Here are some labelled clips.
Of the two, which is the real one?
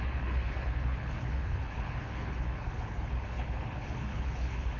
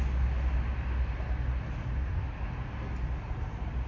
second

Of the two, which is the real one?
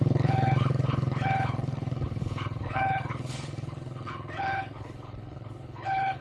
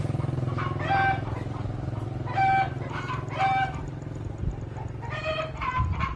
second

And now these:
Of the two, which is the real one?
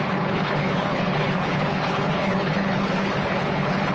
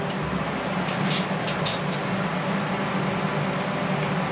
second